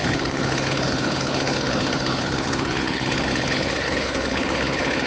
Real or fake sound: fake